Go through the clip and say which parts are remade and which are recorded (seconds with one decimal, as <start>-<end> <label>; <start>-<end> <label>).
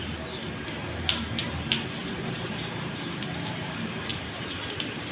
0.0-2.0 recorded; 2.0-2.6 remade; 2.6-4.1 recorded; 4.1-5.1 remade